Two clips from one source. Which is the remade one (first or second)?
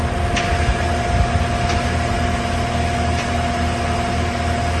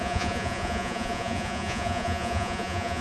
second